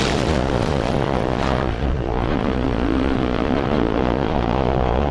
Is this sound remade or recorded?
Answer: remade